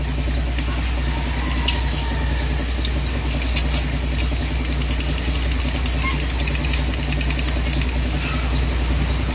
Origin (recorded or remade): recorded